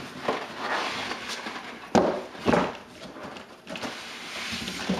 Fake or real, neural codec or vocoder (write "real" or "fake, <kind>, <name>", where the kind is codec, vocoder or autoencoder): real